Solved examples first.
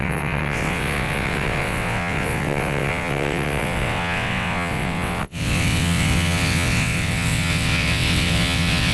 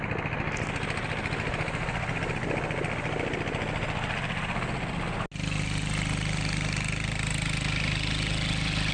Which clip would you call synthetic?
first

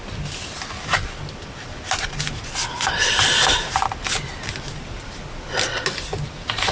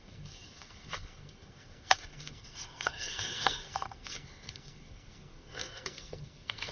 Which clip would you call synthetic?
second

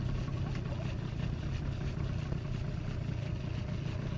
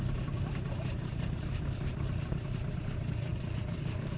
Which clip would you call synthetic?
second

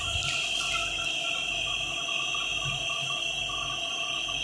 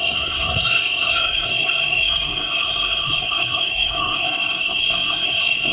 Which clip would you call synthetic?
second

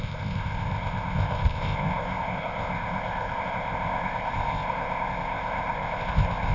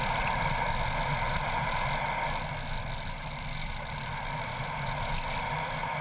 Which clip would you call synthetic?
first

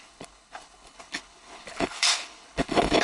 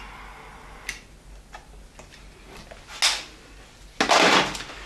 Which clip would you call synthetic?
first